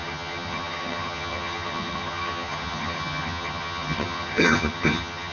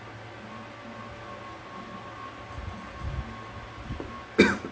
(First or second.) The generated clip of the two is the first